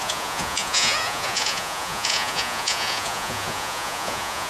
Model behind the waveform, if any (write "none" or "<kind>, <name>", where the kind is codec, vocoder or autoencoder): vocoder, Vocos